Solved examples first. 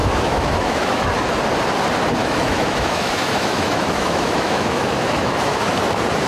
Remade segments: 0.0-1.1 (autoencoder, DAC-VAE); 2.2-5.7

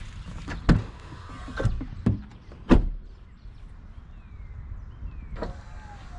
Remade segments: 0.8-1.3 (autoencoder, DAC-VAE)

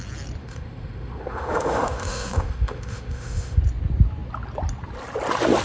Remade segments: 0.4-3.6 (autoencoder, DAC-VAE)

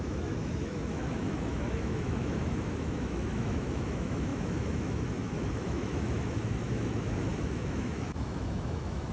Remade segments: 0.0-9.1 (autoencoder, DAC-VAE)

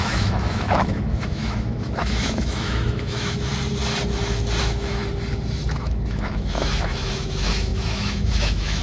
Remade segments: 0.0-3.5 (autoencoder, DAC-VAE); 4.6-5.0; 5.7-8.8

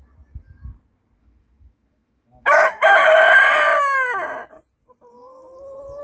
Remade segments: 1.2-3.2 (autoencoder, DAC-VAE)

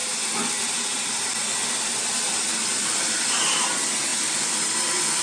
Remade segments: none

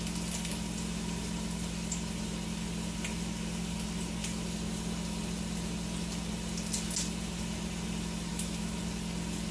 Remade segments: 8.3-8.8 (autoencoder, DAC-VAE)